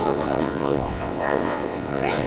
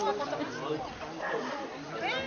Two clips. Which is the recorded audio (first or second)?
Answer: second